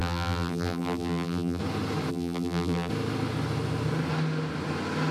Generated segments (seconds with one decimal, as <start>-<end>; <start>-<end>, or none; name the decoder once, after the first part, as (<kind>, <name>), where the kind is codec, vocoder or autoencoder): 0.0-1.6 (vocoder, BigVGAN v2); 2.1-2.9